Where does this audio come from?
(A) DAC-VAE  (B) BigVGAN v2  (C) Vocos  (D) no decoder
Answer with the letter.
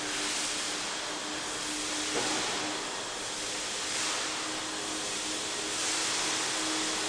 D